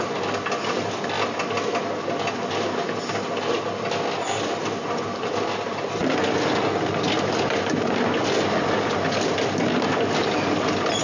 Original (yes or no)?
yes